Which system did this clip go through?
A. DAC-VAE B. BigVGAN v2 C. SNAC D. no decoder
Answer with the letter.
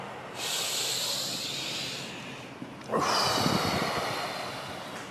D